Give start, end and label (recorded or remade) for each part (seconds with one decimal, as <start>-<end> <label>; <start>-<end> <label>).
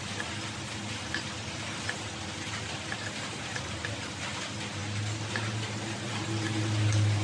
0.0-7.2 recorded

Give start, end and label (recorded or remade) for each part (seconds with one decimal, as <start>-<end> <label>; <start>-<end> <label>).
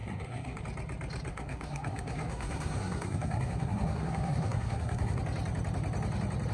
0.0-0.6 remade; 0.6-1.3 recorded; 1.3-5.2 remade; 5.2-6.5 recorded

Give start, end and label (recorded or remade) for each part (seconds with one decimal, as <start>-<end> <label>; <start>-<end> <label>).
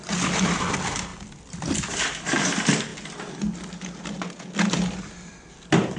0.0-6.0 recorded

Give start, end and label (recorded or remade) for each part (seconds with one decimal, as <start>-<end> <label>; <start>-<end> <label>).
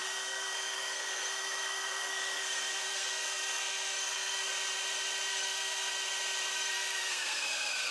0.0-4.5 remade; 4.5-5.3 recorded; 5.3-5.9 remade; 5.9-6.5 recorded; 6.5-7.9 remade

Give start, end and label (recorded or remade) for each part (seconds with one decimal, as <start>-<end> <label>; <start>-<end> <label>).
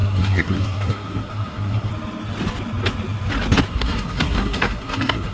0.0-1.9 remade; 1.9-3.7 recorded; 3.7-5.3 remade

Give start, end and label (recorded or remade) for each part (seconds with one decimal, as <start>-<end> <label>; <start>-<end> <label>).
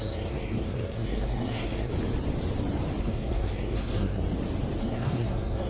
0.0-1.9 remade; 1.9-3.0 recorded; 3.0-4.2 remade; 4.2-4.8 recorded; 4.8-5.7 remade